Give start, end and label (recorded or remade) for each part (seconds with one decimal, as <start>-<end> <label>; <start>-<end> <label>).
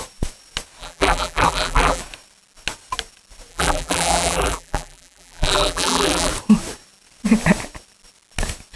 0.0-0.8 recorded; 0.8-2.0 remade; 2.0-3.5 recorded; 3.5-6.3 remade; 6.3-8.8 recorded